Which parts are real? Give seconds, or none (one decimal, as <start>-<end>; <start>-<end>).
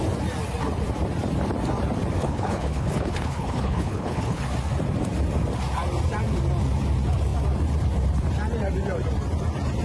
0.0-2.2; 4.4-9.8